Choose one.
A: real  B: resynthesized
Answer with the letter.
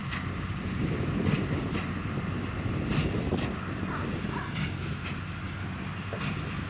A